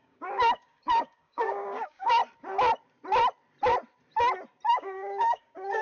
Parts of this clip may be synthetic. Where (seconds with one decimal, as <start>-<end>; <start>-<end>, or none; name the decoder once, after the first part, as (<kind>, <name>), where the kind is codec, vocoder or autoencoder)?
0.0-2.2 (codec, DAC); 4.7-5.8